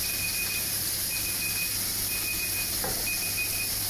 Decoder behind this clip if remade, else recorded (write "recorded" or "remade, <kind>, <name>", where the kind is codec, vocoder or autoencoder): recorded